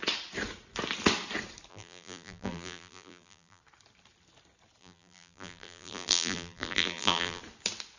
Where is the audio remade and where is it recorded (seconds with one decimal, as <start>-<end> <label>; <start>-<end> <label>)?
0.0-1.7 recorded; 1.7-3.6 remade; 3.6-4.8 recorded; 4.8-7.4 remade; 7.4-8.0 recorded